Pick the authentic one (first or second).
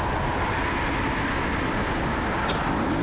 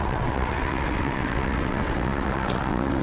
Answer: first